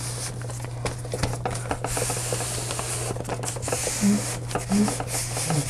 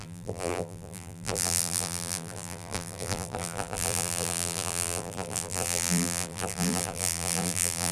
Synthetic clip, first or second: second